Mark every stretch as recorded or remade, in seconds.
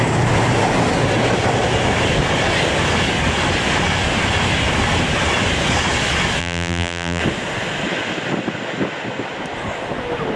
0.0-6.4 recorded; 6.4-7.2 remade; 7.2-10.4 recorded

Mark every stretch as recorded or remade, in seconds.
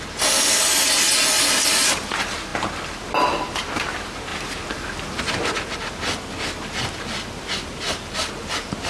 0.0-8.9 recorded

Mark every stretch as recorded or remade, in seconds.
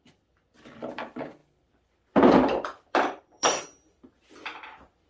0.0-1.4 recorded; 1.4-3.6 remade; 3.6-5.1 recorded